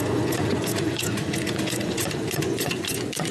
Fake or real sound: fake